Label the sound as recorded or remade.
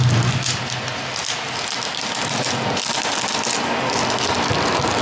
recorded